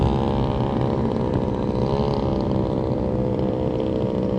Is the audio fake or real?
real